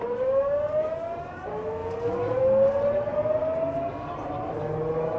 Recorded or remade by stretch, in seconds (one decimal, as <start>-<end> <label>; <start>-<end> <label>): 0.0-5.2 recorded